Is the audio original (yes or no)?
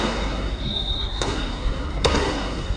no